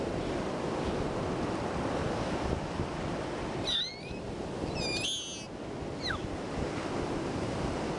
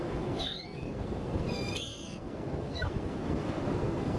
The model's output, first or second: second